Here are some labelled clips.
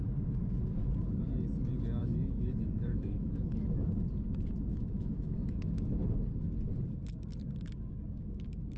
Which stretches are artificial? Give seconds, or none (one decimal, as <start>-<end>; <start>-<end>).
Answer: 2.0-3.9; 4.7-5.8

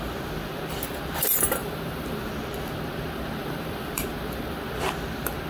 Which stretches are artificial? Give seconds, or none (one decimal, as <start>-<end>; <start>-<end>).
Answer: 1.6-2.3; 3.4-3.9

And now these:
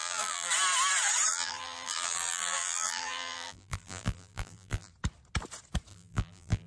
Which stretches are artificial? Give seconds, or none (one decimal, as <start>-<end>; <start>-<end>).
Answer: 0.0-0.5; 1.3-4.9; 5.9-6.7

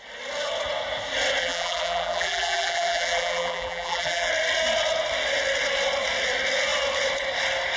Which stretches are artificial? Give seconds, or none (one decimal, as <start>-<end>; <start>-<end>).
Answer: 1.4-4.3

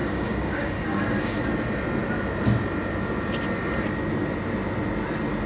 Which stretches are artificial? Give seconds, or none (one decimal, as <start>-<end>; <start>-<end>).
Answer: 0.0-1.3

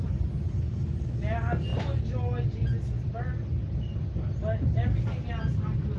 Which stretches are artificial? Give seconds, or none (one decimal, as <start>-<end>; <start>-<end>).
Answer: none

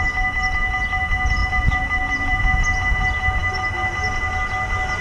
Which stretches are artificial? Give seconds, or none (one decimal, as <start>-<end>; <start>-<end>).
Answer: 1.4-2.4

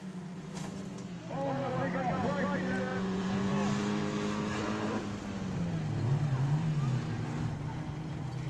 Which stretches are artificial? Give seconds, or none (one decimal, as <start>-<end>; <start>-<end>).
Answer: 2.9-3.5